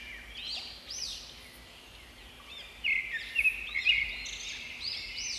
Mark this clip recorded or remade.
recorded